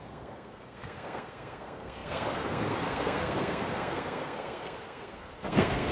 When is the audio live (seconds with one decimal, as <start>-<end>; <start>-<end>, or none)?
none